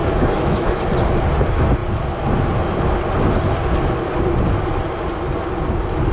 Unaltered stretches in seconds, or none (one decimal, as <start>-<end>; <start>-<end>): 0.8-6.1